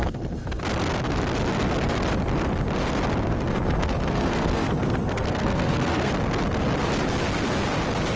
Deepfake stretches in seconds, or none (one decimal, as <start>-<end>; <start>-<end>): 0.0-0.6; 3.3-6.1